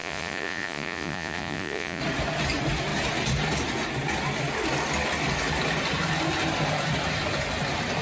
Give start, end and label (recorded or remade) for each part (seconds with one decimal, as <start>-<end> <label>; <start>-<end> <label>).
0.0-2.0 remade; 2.0-8.0 recorded